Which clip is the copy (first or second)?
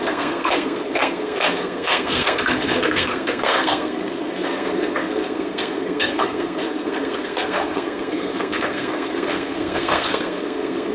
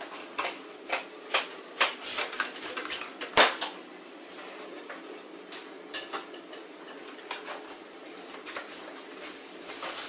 first